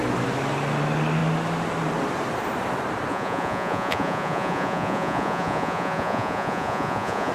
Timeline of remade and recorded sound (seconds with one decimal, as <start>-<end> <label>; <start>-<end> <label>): 0.0-3.1 recorded; 3.1-7.3 remade